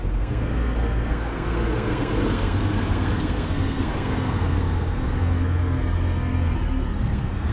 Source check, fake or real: fake